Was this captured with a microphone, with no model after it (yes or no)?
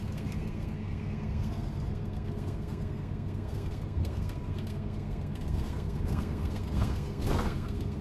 no